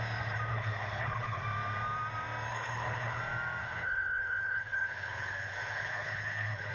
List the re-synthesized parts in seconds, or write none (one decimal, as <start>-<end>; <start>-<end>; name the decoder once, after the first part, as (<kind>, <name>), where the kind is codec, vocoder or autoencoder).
0.5-1.4 (codec, HILCodec); 2.5-3.2; 3.6-6.7